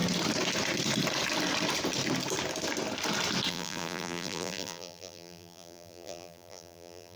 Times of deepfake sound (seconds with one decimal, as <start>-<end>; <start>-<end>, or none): 3.5-7.2

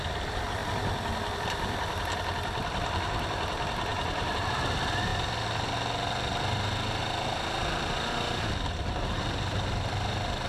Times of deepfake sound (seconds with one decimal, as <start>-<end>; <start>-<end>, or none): 3.9-4.4

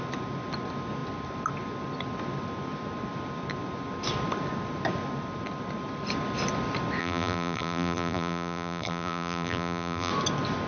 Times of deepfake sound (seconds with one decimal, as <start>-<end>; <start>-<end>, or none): 7.0-10.1

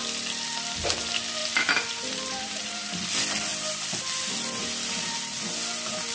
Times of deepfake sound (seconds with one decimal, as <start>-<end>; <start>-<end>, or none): 1.4-2.9

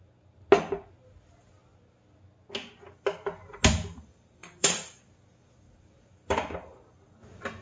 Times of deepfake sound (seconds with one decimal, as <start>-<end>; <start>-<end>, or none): 4.4-5.0